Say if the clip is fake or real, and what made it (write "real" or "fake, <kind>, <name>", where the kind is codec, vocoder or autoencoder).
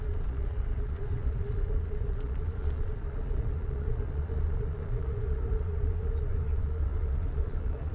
fake, vocoder, Vocos